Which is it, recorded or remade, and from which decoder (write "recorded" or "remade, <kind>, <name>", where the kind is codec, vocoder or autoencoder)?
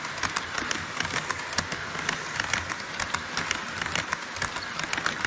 recorded